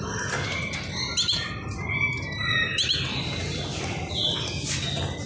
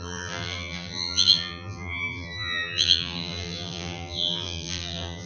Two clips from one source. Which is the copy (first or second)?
second